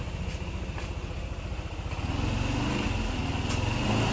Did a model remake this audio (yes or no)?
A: no